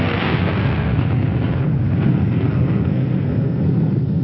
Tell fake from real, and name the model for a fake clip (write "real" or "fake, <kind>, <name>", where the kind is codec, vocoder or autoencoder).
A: fake, codec, SNAC